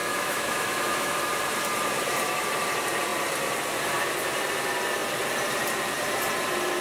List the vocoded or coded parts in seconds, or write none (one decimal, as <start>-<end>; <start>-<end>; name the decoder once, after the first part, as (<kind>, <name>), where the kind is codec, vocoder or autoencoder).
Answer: 0.0-1.2 (autoencoder, DAC-VAE)